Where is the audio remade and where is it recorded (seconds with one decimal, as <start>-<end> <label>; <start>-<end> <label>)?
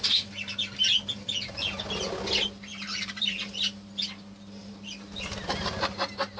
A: 0.0-2.7 recorded; 2.7-3.5 remade; 3.5-6.4 recorded